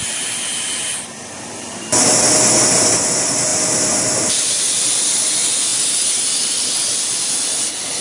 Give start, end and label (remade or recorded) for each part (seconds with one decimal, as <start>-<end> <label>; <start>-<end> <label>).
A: 0.0-5.7 recorded; 5.7-7.4 remade; 7.4-8.0 recorded